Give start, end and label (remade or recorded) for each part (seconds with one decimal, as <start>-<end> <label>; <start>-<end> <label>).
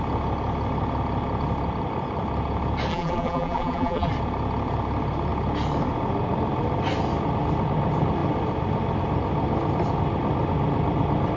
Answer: 0.0-2.9 recorded; 2.9-4.1 remade; 4.1-11.4 recorded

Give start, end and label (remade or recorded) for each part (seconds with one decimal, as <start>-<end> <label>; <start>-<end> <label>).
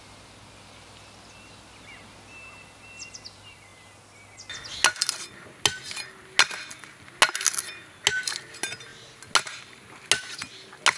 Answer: 0.0-11.0 recorded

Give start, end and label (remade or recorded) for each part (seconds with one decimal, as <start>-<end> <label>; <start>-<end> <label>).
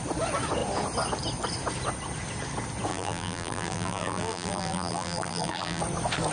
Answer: 0.0-2.9 recorded; 2.9-5.8 remade; 5.8-6.3 recorded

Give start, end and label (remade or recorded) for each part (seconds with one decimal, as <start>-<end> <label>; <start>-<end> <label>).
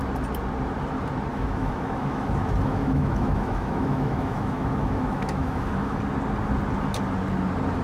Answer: 0.0-1.3 recorded; 1.3-6.0 remade; 6.0-7.8 recorded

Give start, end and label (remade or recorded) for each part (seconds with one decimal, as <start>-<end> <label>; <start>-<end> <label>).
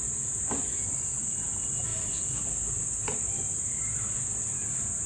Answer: 0.0-5.1 recorded